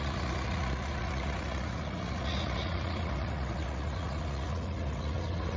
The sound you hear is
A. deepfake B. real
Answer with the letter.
A